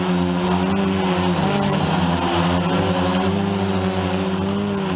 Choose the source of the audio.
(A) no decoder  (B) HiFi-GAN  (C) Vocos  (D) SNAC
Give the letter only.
A